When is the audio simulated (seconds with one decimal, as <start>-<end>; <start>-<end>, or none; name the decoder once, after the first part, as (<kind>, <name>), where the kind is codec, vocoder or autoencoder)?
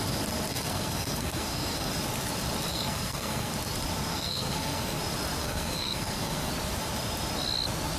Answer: 0.5-1.9 (codec, SNAC); 2.7-3.5; 4.1-5.0; 5.4-6.5